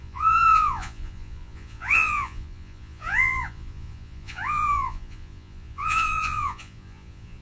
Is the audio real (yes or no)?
no